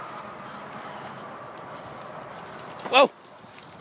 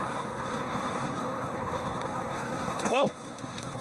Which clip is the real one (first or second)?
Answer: first